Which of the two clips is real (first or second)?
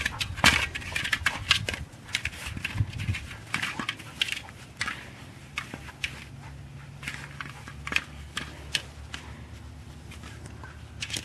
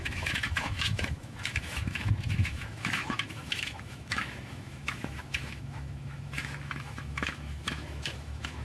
first